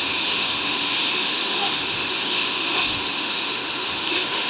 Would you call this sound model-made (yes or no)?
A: yes